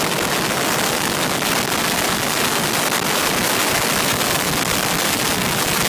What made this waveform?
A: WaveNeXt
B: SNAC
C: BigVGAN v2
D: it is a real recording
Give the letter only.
D